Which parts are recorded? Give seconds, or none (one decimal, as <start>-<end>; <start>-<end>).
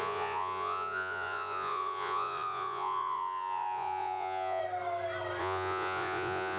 4.6-5.4